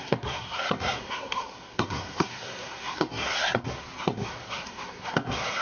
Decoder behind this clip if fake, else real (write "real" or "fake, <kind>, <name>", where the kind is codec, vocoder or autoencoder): fake, codec, SNAC